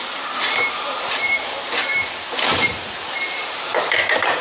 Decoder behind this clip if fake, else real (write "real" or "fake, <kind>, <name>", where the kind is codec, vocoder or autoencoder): fake, vocoder, BigVGAN v2